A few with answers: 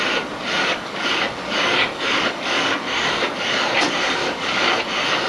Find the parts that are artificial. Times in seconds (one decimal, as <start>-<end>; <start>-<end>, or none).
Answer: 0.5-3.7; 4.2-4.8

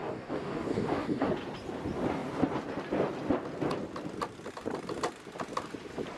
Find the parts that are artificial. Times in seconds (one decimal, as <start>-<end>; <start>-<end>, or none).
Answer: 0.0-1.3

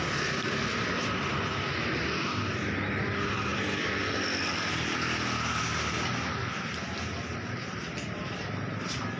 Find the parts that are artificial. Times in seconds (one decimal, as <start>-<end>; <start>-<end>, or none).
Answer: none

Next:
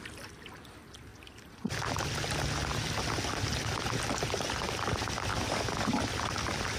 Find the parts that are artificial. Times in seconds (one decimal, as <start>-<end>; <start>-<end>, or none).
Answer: 5.3-6.0

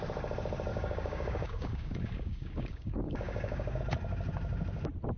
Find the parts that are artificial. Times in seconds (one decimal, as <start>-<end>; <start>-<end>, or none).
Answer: 0.7-3.8